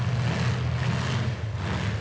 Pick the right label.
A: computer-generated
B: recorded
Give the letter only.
B